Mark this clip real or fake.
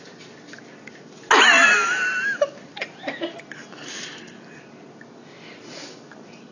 real